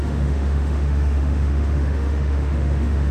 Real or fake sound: fake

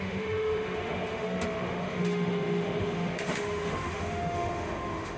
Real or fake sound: fake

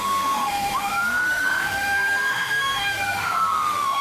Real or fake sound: fake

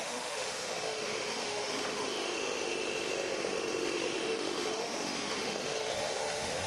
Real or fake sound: fake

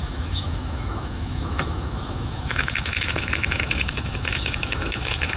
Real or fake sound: fake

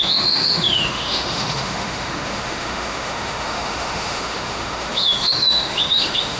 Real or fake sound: fake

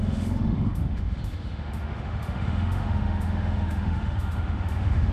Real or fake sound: fake